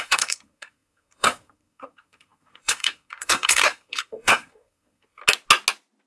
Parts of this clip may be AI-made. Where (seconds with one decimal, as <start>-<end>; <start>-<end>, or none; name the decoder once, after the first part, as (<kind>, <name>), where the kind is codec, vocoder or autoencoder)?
0.0-5.2 (codec, SNAC)